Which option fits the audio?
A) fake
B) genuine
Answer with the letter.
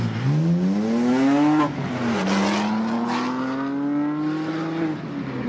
B